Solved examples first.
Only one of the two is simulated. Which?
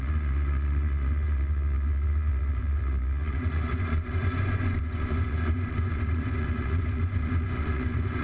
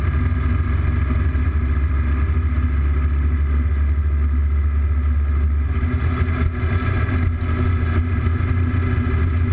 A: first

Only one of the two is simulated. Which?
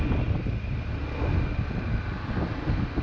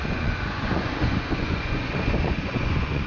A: second